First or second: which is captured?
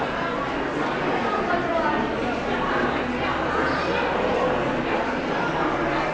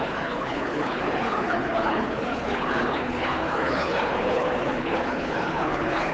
first